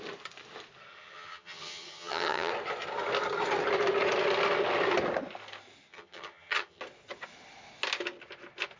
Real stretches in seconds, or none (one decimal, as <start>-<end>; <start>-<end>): 0.0-0.9; 2.5-5.9; 6.8-8.8